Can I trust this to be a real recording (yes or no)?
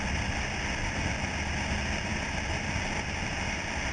yes